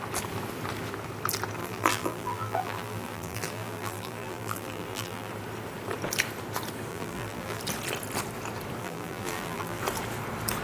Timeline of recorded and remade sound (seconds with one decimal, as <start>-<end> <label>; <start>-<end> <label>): 0.0-1.6 recorded; 1.6-5.3 remade; 5.3-6.9 recorded; 6.9-7.6 remade; 7.6-8.8 recorded; 8.8-9.8 remade; 9.8-10.6 recorded